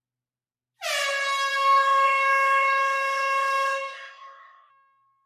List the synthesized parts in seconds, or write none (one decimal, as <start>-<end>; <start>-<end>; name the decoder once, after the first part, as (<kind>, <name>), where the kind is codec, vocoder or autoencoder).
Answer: 1.5-4.7 (codec, DAC)